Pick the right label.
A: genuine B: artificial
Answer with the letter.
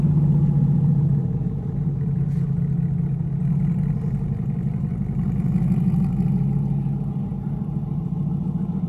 A